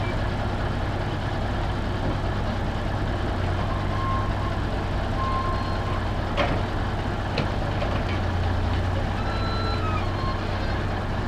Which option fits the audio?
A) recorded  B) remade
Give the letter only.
A